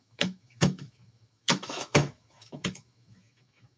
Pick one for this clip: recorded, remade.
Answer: remade